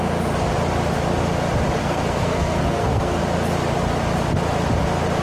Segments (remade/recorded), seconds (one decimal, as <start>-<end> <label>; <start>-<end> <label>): 0.0-1.8 recorded; 1.8-3.2 remade; 3.2-5.2 recorded

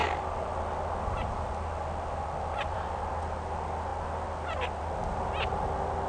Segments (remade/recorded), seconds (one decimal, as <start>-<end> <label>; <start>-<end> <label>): 0.0-3.0 remade; 3.0-6.1 recorded